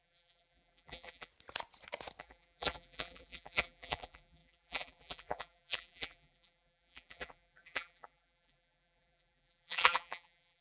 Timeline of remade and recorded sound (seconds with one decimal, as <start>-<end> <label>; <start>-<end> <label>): 0.0-1.3 remade; 1.3-2.2 recorded; 2.2-10.6 remade